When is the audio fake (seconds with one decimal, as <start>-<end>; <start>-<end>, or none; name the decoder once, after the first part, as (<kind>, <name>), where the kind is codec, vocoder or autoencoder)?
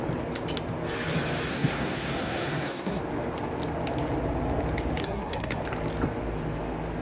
1.5-3.0 (codec, SNAC); 5.0-5.6